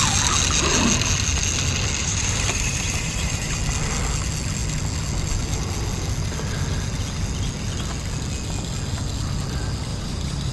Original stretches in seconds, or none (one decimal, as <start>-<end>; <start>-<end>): 0.0-2.0; 3.6-9.9